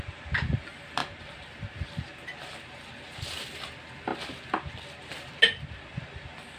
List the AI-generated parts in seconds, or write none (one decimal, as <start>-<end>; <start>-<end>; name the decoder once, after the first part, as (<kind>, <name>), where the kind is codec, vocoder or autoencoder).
none